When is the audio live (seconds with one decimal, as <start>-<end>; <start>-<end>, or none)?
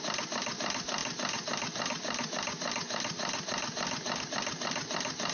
0.0-5.3